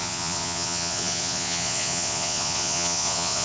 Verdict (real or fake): fake